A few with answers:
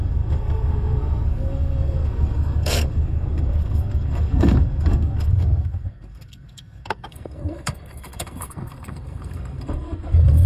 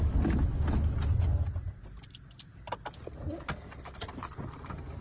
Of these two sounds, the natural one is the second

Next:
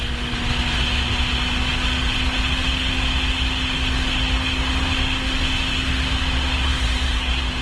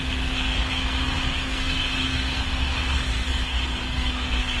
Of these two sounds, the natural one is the first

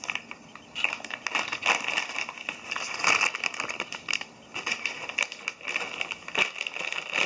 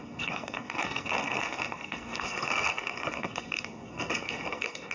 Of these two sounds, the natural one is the first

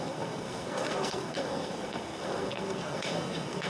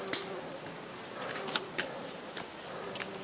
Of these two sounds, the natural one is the second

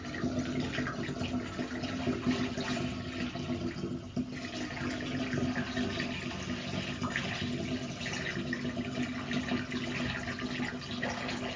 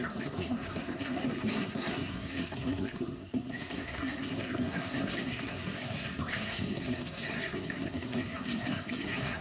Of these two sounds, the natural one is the first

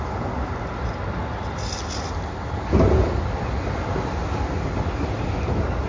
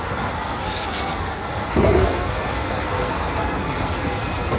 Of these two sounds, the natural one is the first